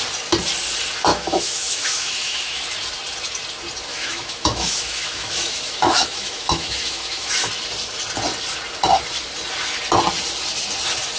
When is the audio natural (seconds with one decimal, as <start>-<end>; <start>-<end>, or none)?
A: 0.0-1.1; 2.6-3.9; 7.5-11.2